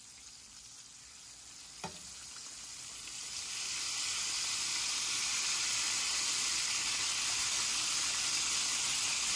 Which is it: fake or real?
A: real